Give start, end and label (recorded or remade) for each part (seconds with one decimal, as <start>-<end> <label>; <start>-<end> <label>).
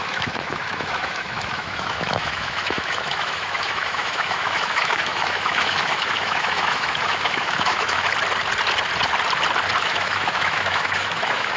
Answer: 0.0-8.1 remade; 8.1-9.8 recorded; 9.8-11.6 remade